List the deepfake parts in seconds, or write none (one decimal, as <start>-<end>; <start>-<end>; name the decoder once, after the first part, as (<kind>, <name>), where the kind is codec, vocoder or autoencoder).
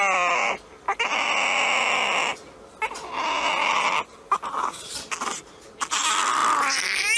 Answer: none